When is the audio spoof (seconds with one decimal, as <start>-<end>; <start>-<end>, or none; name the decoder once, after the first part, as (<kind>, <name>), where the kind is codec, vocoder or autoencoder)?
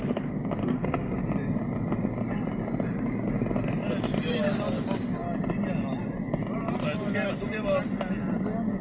0.6-1.2 (codec, SNAC)